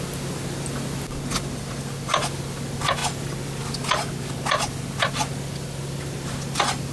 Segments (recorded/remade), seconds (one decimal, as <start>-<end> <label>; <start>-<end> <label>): 0.0-6.9 recorded